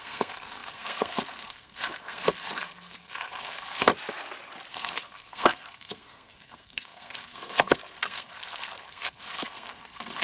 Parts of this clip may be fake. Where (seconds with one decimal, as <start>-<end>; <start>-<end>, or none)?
0.0-3.9; 4.7-10.2